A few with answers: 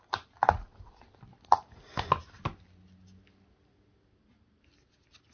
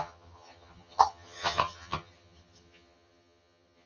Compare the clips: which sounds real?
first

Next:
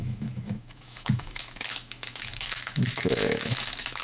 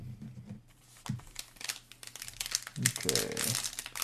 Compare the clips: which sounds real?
second